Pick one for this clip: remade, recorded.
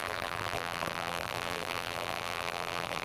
remade